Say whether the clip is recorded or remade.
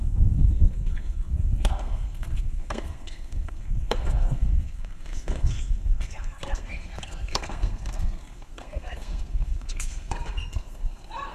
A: remade